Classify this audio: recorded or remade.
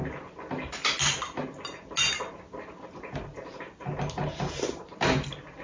recorded